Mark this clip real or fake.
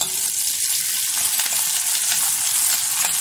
real